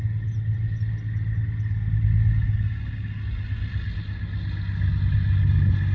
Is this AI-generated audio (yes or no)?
no